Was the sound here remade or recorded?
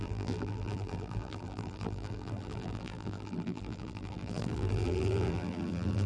remade